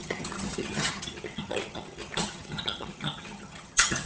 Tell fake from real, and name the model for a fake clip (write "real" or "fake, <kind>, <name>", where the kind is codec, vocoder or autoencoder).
fake, vocoder, HiFi-GAN